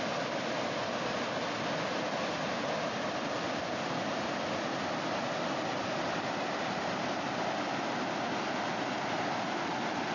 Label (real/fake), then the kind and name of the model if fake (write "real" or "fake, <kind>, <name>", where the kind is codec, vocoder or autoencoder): real